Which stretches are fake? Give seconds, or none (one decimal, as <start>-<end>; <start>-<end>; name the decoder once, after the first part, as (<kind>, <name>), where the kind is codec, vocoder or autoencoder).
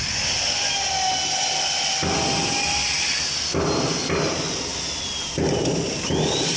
none